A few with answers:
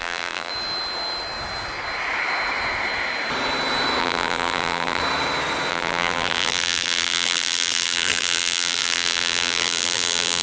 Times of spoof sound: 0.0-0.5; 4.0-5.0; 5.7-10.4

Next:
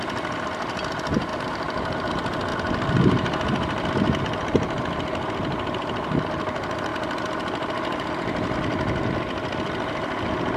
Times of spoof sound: 1.3-2.1

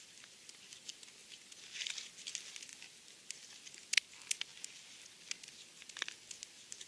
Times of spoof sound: 4.5-6.1

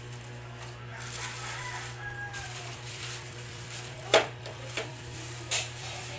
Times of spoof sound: 2.3-6.2

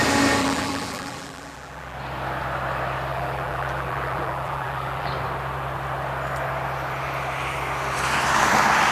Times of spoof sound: 0.4-2.0; 3.1-5.1

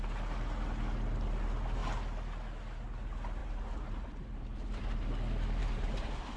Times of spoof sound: 3.4-5.1; 5.6-6.4

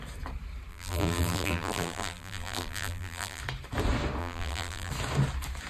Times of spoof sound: 0.7-3.4; 4.2-4.9

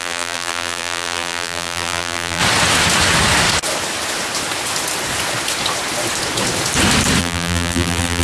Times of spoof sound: 0.0-2.4; 7.2-8.2